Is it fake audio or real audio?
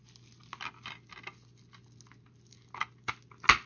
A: real